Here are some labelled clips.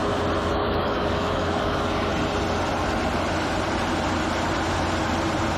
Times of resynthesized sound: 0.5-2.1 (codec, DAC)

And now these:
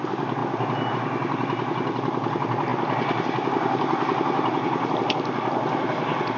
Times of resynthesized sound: none

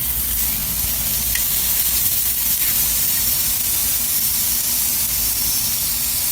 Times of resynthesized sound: none

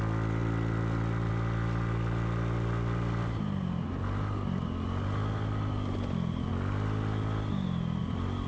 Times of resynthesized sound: none

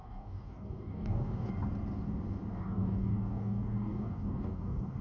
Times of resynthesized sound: 0.0-1.5 (codec, DAC); 2.5-5.0

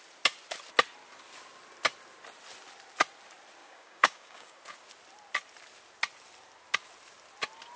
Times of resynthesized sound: 3.6-4.6 (codec, DAC)

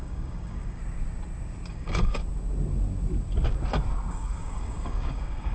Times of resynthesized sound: 0.0-0.8 (codec, DAC); 1.7-2.2; 4.1-5.5